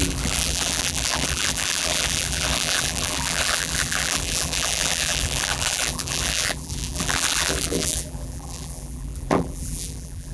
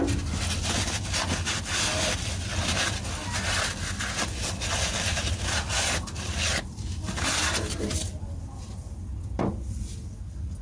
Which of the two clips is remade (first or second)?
first